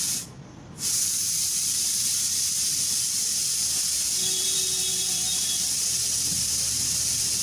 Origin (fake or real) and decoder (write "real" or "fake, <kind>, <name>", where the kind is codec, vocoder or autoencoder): fake, vocoder, BigVGAN v2